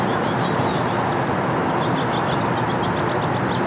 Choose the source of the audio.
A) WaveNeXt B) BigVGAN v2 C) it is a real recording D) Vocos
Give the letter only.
C